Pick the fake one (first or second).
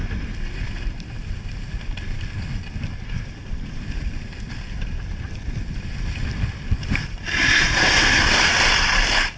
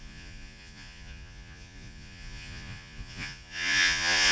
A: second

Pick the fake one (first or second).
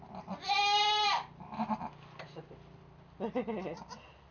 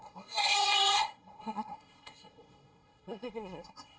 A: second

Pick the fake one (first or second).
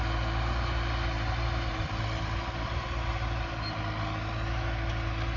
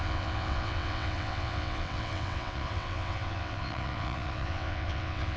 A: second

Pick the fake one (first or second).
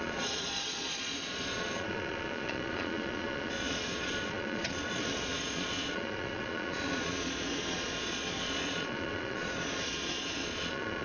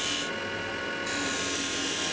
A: first